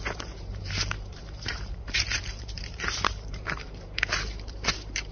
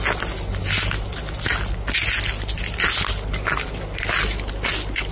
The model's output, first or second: first